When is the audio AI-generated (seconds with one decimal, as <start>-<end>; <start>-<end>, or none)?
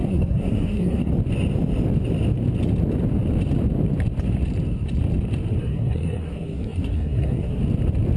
0.0-1.1; 5.6-7.6